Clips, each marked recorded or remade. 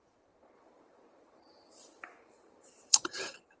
remade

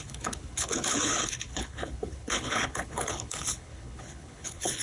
remade